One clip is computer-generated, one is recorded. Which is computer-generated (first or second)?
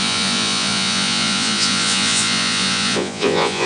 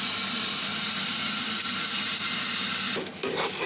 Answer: first